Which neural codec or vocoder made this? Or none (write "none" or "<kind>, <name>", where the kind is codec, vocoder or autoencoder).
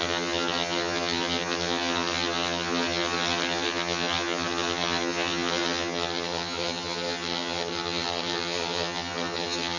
vocoder, HiFi-GAN